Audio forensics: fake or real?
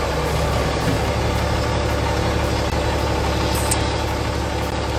real